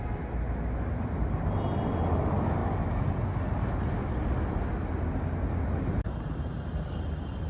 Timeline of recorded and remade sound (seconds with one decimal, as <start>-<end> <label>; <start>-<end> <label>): 0.0-7.5 recorded